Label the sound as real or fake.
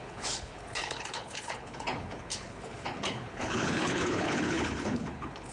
fake